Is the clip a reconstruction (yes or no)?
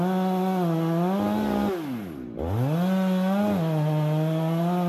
no